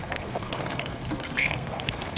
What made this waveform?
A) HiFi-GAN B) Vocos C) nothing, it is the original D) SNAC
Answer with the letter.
D